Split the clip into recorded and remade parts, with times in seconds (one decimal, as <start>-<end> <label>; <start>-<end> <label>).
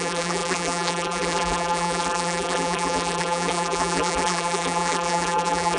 0.0-5.8 remade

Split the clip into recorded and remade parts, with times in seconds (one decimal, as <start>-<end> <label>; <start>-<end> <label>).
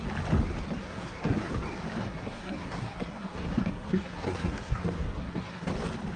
0.0-0.8 recorded; 0.8-1.5 remade; 1.5-2.0 recorded; 2.0-5.7 remade; 5.7-6.2 recorded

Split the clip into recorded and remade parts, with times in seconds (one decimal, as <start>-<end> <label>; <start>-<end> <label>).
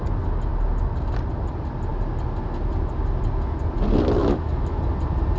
0.0-4.2 recorded; 4.2-4.8 remade; 4.8-5.4 recorded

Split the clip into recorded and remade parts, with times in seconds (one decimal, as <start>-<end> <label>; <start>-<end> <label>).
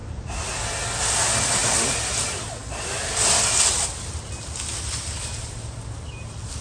0.0-1.6 recorded; 1.6-2.2 remade; 2.2-6.6 recorded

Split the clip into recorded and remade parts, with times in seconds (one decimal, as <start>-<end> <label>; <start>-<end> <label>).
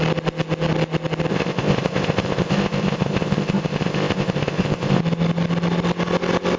0.0-1.3 recorded; 1.3-5.0 remade; 5.0-6.6 recorded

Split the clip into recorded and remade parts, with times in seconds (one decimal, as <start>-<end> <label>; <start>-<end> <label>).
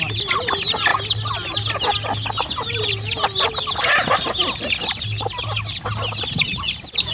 0.0-7.1 recorded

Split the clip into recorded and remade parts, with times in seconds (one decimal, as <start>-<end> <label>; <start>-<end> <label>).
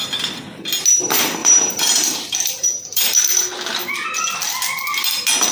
0.0-1.4 recorded; 1.4-3.5 remade; 3.5-5.5 recorded